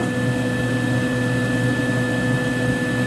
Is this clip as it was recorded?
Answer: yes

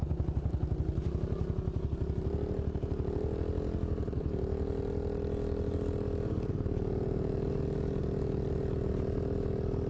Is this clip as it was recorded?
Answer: yes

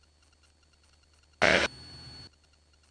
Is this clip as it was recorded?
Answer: yes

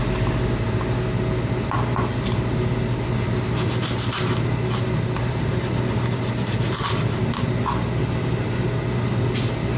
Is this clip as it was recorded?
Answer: yes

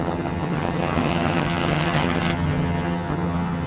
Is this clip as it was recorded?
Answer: no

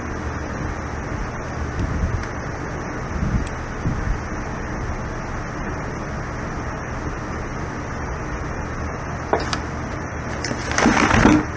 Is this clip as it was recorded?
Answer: yes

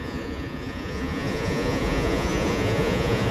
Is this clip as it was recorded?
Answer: no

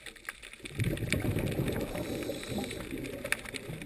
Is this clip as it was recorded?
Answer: yes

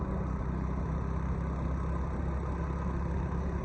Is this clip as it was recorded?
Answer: yes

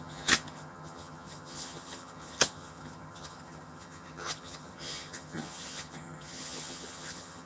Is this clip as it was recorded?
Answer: no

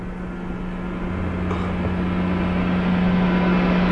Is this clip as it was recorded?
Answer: yes